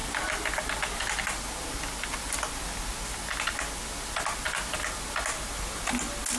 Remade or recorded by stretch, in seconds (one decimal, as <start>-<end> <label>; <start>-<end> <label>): 0.0-6.4 recorded